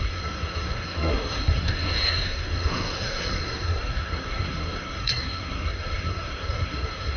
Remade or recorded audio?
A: remade